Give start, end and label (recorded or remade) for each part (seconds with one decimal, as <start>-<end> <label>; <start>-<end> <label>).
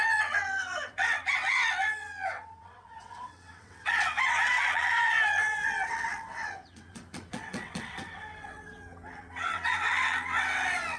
0.0-11.0 remade